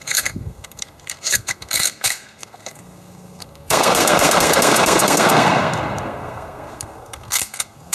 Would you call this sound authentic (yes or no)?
no